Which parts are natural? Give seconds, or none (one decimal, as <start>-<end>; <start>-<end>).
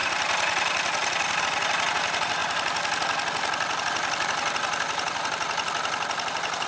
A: 0.0-6.7